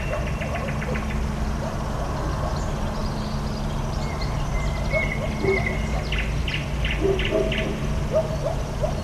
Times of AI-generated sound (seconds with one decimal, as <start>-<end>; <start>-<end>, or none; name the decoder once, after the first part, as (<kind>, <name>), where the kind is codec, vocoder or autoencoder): none